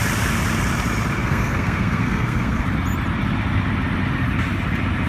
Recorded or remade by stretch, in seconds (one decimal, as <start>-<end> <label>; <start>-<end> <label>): 0.0-1.2 recorded; 1.2-2.6 remade; 2.6-5.1 recorded